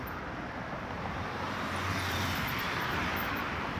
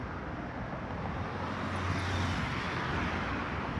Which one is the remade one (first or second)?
first